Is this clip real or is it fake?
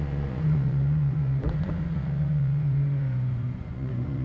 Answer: fake